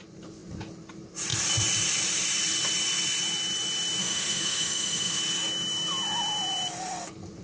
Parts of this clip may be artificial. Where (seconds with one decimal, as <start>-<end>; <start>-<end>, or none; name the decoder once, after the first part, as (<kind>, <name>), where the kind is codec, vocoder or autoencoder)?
4.0-5.2 (autoencoder, DAC-VAE)